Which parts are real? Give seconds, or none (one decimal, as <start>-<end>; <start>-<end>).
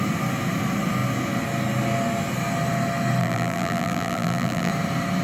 0.0-3.2; 4.7-5.2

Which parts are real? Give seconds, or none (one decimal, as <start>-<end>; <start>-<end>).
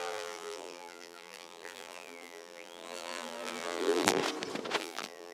4.2-4.8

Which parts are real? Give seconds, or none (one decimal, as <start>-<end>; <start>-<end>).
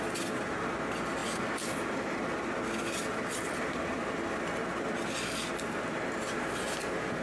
0.0-7.2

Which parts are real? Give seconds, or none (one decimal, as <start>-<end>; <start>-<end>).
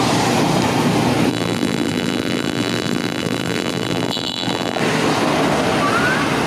0.0-1.3; 4.8-6.5